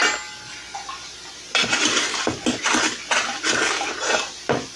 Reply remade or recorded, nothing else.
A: recorded